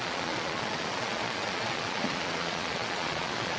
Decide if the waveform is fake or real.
fake